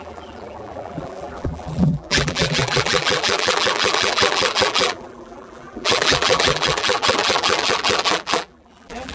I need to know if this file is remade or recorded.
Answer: remade